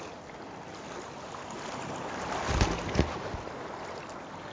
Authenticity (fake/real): real